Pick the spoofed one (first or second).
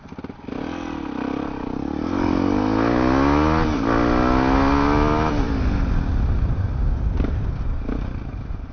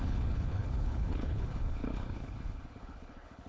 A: second